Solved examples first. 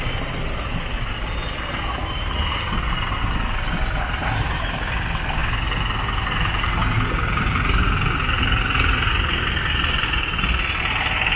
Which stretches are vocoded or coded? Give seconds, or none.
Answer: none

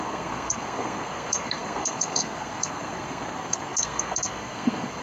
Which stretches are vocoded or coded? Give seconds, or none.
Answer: 0.0-5.0 (codec, SNAC)

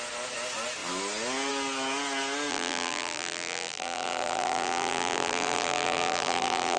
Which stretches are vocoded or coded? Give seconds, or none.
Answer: 2.5-6.8 (vocoder, BigVGAN v2)